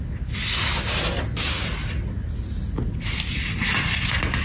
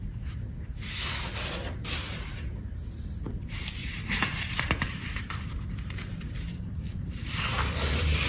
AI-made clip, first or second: second